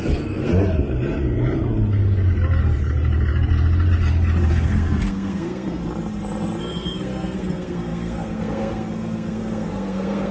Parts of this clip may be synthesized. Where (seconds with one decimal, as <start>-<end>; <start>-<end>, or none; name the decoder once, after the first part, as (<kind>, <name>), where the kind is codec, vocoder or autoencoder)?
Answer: 0.0-0.5 (codec, SNAC); 4.5-5.8; 6.6-10.3